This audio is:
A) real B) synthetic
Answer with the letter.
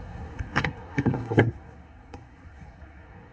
B